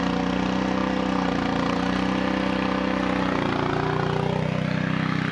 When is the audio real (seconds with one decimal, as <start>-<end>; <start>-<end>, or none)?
0.0-5.3